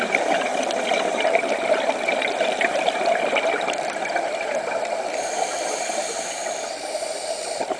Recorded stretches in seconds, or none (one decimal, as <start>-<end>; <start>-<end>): 0.0-0.5; 4.6-6.4